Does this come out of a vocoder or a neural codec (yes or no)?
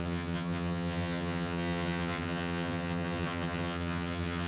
yes